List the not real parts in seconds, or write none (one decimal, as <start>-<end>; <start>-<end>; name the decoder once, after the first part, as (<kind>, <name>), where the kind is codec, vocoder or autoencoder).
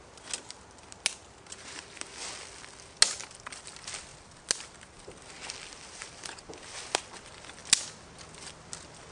none